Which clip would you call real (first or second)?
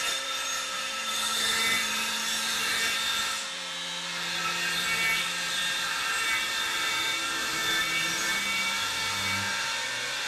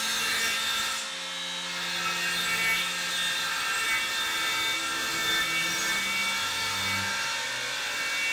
second